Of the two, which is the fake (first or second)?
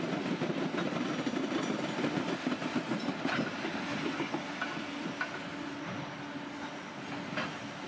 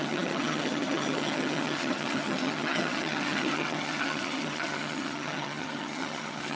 second